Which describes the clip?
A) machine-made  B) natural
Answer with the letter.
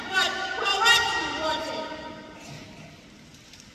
B